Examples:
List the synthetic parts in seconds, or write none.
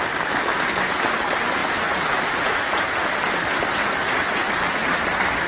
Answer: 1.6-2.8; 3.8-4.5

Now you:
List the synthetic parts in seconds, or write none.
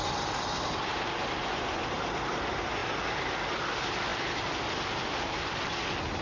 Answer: 1.4-1.9